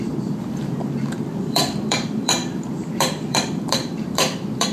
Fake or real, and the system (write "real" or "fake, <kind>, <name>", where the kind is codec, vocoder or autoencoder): fake, vocoder, BigVGAN v2